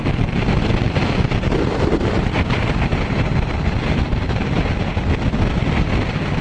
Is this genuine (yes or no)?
yes